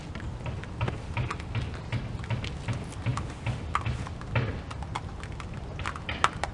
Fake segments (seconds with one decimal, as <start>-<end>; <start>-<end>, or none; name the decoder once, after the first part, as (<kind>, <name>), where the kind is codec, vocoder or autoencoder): none